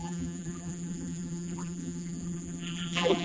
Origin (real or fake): fake